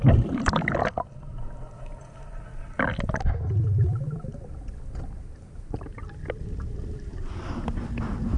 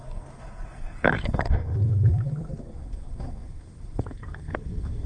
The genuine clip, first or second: first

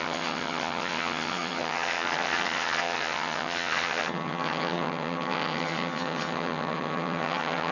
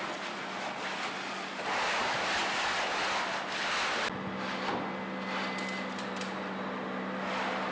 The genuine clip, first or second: second